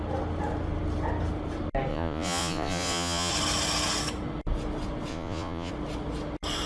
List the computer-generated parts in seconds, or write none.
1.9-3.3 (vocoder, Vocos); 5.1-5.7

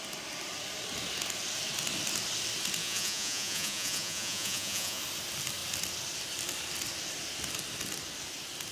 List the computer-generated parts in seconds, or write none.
2.8-5.0 (vocoder, Vocos)

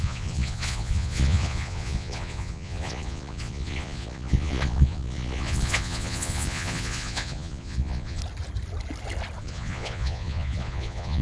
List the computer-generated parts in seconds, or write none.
0.0-8.2 (vocoder, Vocos); 9.4-11.2